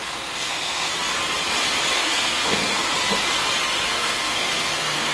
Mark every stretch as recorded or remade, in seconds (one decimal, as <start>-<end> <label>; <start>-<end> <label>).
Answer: 0.0-0.9 remade; 0.9-1.9 recorded; 1.9-2.9 remade; 2.9-3.9 recorded; 3.9-5.1 remade